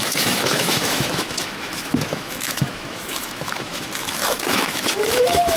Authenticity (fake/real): fake